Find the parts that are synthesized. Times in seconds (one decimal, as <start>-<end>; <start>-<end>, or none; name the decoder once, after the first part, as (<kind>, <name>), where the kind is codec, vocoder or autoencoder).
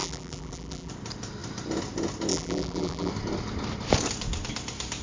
0.0-0.9 (vocoder, BigVGAN v2); 2.3-3.1